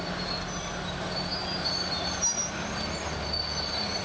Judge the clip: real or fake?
real